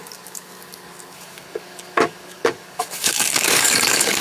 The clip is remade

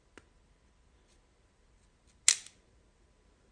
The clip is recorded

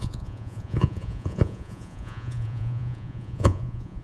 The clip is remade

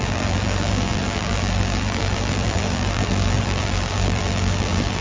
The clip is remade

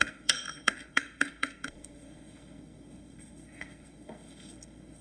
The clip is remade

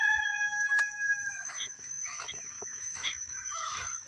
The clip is remade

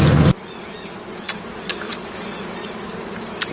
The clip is recorded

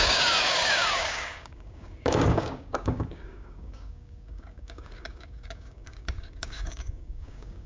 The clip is remade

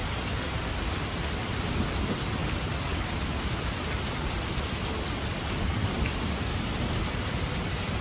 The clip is recorded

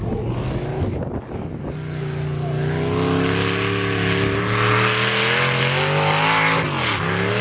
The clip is recorded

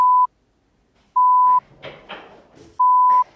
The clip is recorded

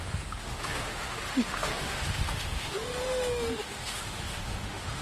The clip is remade